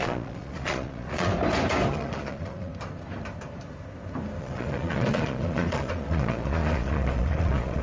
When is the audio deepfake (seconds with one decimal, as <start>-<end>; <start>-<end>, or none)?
0.0-1.3; 1.9-2.7; 4.4-7.8

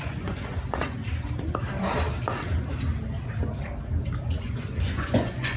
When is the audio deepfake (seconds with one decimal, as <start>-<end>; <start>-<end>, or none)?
0.0-1.0; 4.4-5.6

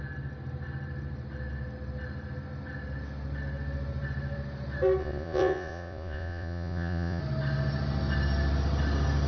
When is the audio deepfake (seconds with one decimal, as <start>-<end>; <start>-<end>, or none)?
5.0-7.2

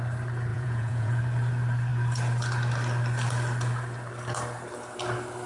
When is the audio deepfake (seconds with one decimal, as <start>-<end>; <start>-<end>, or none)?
0.5-1.2

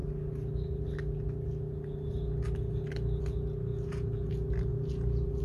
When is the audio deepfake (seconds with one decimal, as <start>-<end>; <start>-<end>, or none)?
3.7-4.3; 4.7-5.4

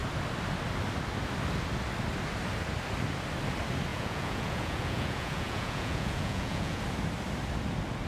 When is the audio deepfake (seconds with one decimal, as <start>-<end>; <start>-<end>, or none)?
3.9-6.8

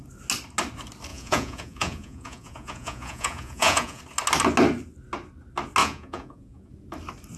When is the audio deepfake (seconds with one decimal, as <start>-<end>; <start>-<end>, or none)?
1.1-4.0; 5.8-6.7

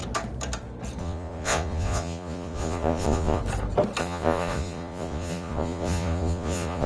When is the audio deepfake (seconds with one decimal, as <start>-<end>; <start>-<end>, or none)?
1.0-3.4; 4.0-6.9